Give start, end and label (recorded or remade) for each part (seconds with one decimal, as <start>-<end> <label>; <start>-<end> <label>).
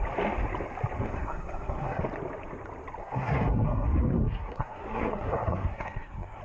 0.0-1.0 recorded; 1.0-2.0 remade; 2.0-3.0 recorded; 3.0-6.4 remade